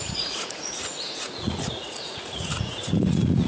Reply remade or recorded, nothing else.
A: remade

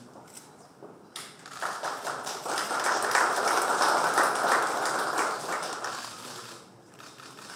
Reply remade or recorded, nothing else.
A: recorded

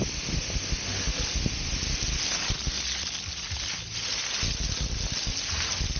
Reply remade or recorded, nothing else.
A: recorded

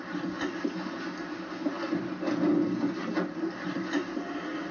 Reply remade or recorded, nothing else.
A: recorded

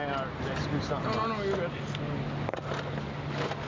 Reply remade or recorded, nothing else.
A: recorded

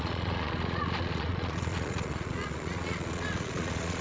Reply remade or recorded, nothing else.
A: remade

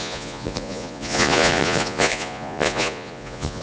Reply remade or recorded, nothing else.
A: remade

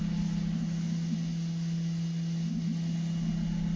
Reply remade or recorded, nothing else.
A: recorded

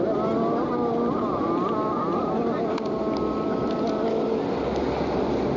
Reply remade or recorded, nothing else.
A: recorded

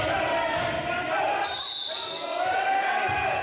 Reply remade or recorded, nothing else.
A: recorded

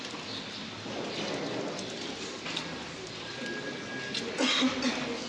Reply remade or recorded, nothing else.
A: recorded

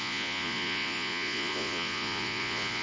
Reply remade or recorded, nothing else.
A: remade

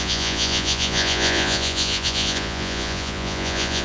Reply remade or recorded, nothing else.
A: remade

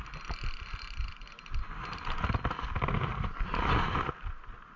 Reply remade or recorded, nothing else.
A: recorded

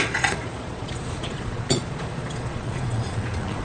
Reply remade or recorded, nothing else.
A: remade